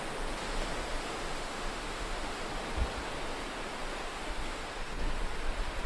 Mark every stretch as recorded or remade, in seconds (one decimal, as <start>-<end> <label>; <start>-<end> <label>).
0.0-0.9 recorded; 0.9-2.5 remade; 2.5-4.0 recorded; 4.0-5.1 remade; 5.1-5.9 recorded